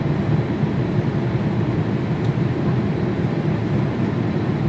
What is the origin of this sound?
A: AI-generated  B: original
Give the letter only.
B